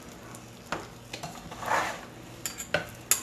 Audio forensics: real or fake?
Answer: real